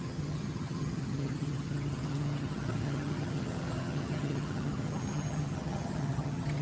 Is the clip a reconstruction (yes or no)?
yes